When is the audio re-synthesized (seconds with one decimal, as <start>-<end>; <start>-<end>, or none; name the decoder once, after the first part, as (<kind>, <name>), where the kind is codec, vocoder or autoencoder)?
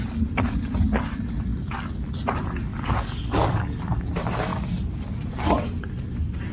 2.7-4.0 (codec, DAC)